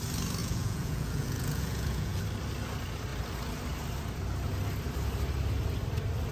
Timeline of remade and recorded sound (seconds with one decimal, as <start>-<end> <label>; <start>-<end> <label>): 0.0-0.4 recorded; 0.4-2.2 remade; 2.2-6.3 recorded